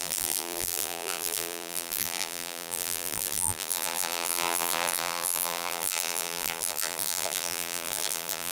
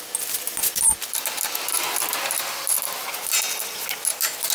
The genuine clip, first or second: second